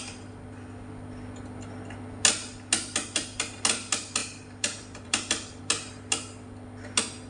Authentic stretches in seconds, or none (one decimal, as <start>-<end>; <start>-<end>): 0.0-4.2; 5.6-7.3